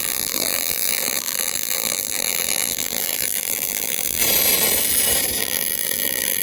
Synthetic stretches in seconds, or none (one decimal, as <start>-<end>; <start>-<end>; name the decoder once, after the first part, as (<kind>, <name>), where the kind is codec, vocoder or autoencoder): 0.0-4.2 (vocoder, BigVGAN v2); 5.4-6.4